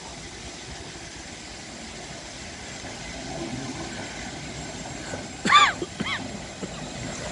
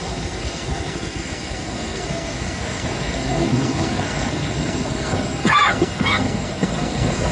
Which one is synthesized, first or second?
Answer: second